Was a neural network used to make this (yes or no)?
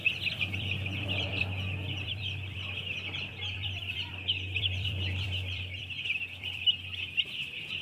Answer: yes